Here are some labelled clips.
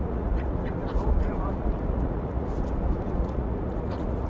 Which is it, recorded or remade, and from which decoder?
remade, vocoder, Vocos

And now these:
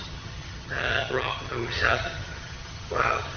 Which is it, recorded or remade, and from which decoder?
remade, vocoder, HiFi-GAN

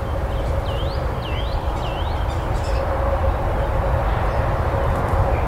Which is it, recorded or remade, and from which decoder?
recorded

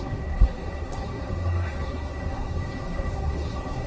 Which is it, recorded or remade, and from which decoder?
remade, codec, SNAC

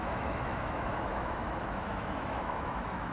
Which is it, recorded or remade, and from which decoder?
remade, autoencoder, DAC-VAE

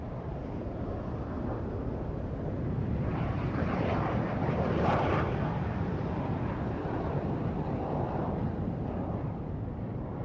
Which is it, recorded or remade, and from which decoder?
remade, vocoder, BigVGAN v2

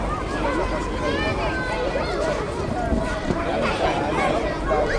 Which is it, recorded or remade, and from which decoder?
recorded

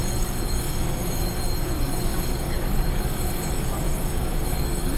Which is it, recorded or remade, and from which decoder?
remade, codec, DAC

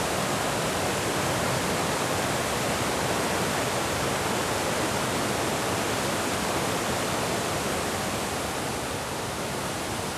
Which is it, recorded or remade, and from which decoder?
recorded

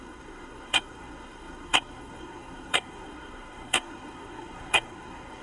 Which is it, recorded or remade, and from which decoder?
remade, codec, SNAC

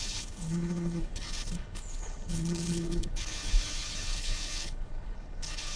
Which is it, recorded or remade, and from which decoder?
remade, codec, HILCodec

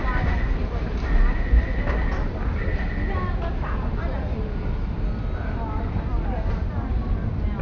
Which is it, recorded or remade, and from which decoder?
recorded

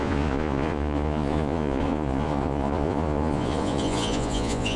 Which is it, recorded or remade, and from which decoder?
remade, vocoder, Vocos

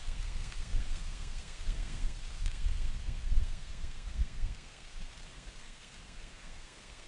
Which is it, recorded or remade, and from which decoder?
remade, codec, SNAC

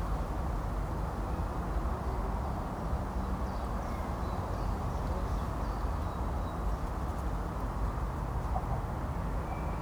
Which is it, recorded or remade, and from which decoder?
recorded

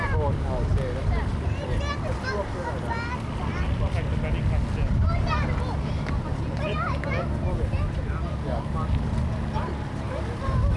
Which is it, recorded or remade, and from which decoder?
recorded